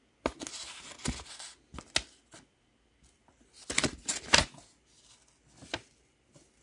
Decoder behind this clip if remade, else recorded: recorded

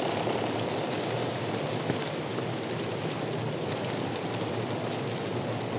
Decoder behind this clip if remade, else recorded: recorded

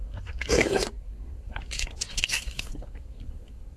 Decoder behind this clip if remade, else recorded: remade, codec, SNAC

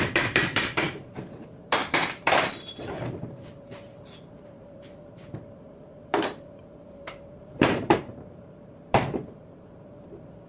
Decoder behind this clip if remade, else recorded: remade, vocoder, BigVGAN v2